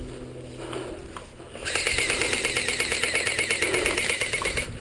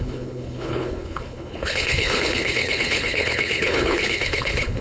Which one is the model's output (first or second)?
second